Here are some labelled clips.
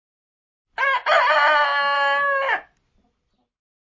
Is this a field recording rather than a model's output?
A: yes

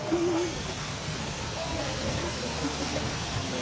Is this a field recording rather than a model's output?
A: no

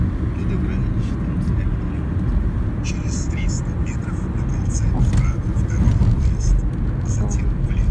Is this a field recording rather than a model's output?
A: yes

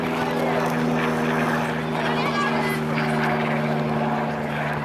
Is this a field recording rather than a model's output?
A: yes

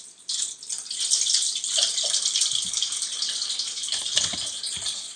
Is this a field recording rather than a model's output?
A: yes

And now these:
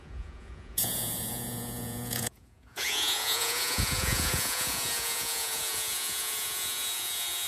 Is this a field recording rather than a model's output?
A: no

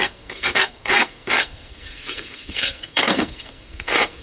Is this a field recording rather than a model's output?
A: no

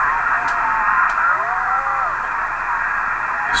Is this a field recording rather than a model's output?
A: yes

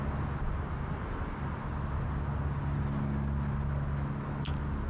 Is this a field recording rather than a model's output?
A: yes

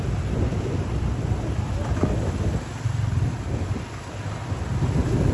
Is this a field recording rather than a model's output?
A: yes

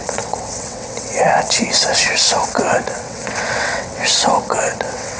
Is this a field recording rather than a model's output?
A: no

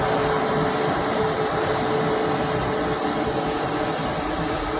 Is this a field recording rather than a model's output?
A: yes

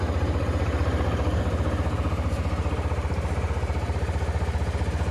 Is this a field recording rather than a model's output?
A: no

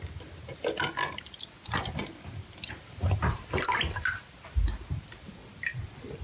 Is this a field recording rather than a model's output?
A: yes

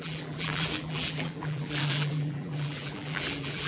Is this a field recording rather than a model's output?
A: no